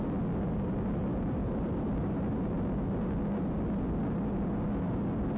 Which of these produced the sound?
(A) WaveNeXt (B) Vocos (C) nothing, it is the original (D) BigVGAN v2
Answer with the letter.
C